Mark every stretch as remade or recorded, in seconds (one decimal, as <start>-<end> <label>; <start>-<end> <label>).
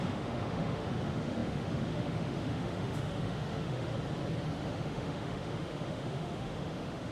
0.0-3.9 remade; 3.9-4.4 recorded; 4.4-7.1 remade